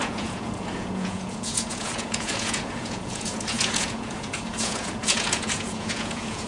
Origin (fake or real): fake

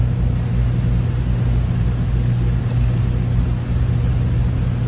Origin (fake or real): real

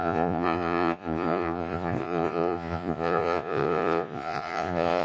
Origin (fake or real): fake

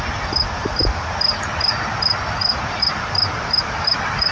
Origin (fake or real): real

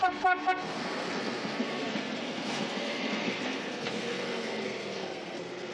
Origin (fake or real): fake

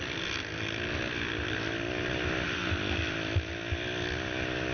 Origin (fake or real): real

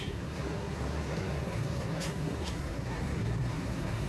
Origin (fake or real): fake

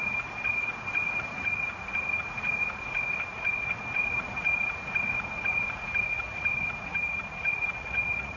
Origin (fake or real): fake